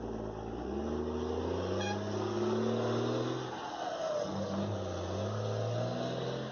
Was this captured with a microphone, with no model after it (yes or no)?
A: yes